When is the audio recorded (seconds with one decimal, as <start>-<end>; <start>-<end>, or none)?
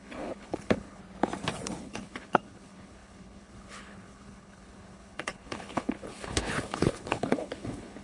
1.0-1.8